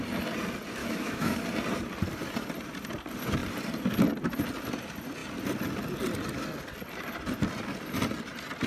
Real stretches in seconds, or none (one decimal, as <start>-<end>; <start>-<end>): 0.0-0.8; 1.4-8.7